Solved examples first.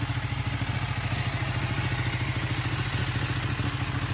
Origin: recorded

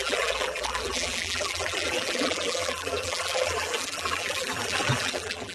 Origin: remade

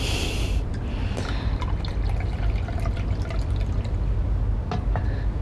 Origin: recorded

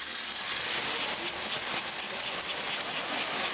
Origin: recorded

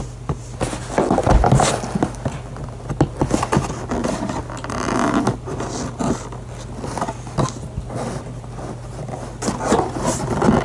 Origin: recorded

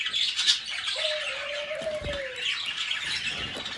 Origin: recorded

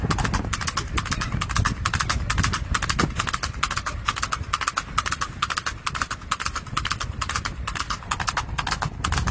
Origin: recorded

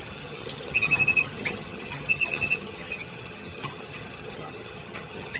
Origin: remade